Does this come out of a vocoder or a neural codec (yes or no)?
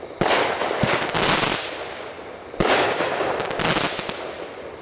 no